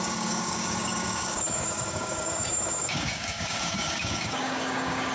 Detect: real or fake fake